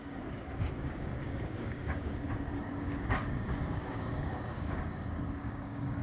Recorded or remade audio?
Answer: remade